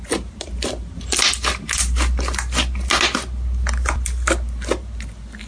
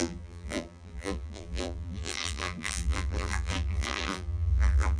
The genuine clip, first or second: first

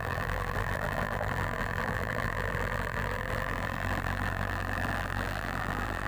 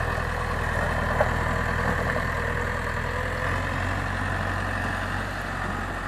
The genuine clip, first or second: second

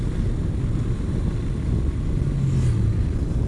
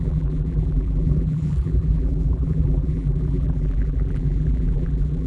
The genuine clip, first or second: first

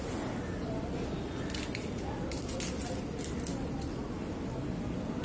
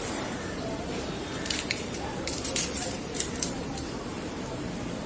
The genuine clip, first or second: first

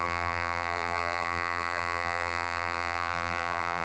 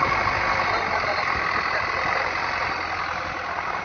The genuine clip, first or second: second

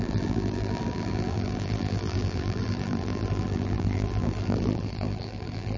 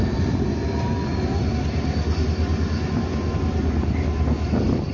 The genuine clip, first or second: second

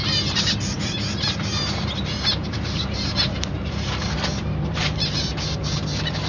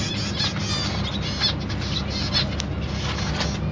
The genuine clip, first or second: second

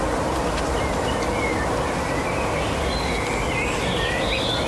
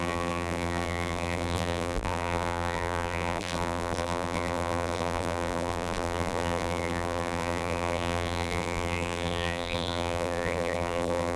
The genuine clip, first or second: first